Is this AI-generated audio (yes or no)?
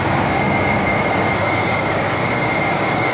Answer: yes